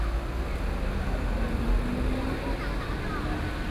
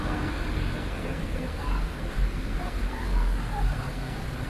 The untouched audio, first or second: first